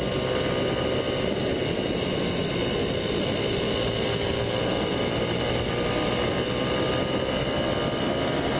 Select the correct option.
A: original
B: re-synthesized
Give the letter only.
A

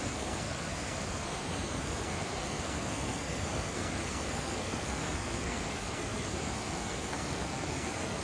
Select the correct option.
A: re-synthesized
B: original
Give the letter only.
A